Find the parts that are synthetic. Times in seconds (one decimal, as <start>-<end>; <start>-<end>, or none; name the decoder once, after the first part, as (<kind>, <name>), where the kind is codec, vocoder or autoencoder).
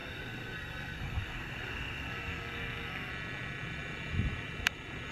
0.0-3.1 (codec, SNAC)